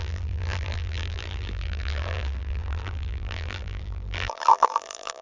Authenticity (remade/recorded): remade